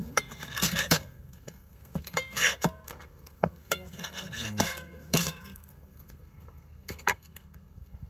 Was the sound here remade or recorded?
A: remade